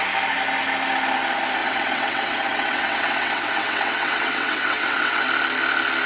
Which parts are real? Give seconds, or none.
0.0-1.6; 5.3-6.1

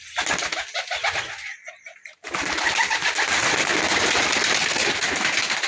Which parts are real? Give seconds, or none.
0.0-1.5; 2.6-3.7; 4.6-5.7